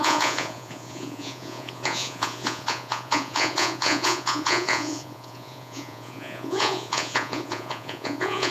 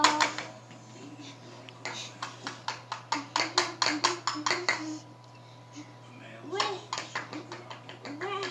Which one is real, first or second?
second